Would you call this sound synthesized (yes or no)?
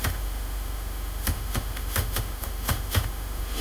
yes